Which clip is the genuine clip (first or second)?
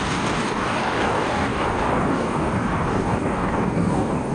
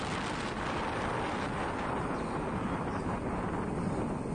second